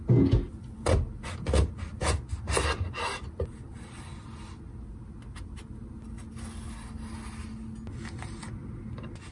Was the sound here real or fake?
real